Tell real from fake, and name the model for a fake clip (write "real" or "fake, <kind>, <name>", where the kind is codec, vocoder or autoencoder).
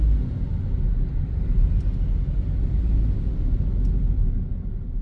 real